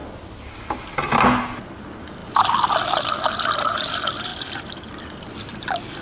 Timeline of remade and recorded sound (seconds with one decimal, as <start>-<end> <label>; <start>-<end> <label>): 0.0-2.2 recorded; 2.2-2.8 remade; 2.8-4.3 recorded; 4.3-5.0 remade; 5.0-6.0 recorded